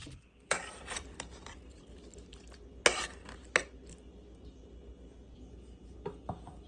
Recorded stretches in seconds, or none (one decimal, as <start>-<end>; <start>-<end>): 1.8-6.7